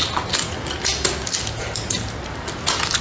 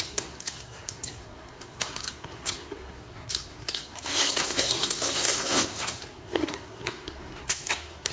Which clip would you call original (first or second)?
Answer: first